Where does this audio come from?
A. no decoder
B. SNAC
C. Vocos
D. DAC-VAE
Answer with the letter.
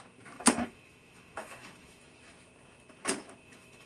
D